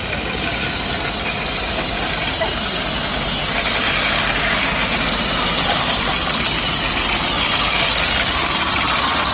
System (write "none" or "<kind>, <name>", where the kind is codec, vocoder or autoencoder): none